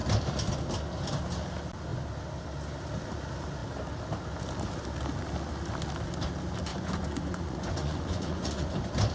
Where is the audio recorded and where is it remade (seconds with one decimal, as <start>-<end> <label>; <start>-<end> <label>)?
0.0-6.7 recorded; 6.7-8.7 remade; 8.7-9.1 recorded